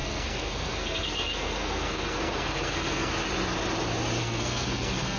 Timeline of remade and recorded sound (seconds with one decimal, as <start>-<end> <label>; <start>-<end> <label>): 0.0-3.1 remade; 3.1-4.2 recorded; 4.2-5.2 remade